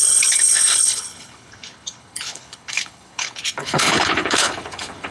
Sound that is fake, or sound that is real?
fake